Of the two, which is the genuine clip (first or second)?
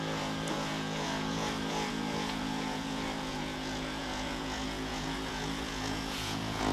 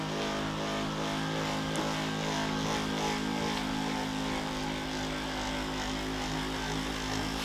second